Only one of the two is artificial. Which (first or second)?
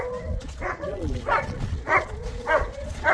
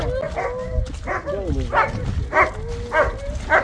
first